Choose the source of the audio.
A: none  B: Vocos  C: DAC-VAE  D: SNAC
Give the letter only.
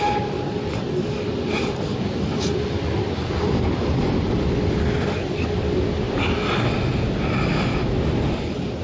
A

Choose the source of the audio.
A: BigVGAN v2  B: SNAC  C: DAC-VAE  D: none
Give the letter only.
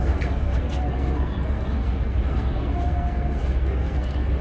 B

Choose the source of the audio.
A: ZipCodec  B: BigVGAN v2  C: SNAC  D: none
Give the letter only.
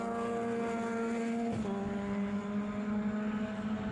D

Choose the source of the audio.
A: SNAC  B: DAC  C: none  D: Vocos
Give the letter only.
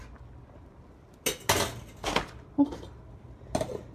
C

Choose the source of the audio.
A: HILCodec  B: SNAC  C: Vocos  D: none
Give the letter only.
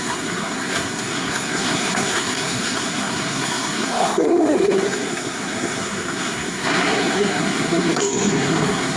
B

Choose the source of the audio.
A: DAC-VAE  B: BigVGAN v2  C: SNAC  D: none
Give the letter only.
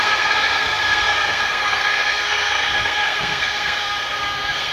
C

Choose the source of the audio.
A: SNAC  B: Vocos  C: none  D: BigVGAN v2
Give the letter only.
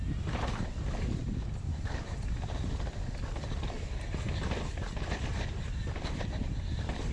C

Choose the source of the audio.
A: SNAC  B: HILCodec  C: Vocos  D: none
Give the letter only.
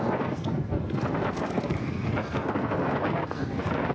A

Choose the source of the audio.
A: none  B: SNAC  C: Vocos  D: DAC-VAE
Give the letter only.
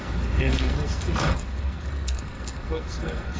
B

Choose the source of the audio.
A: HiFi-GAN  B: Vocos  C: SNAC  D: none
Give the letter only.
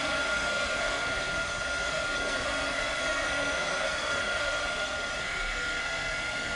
C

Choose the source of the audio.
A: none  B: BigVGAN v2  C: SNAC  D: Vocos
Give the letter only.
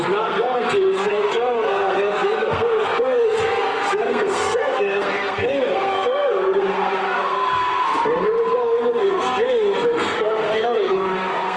C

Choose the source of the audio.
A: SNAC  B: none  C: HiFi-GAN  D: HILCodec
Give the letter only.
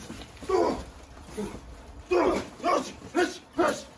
B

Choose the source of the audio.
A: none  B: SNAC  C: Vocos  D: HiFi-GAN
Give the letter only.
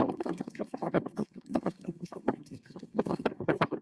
B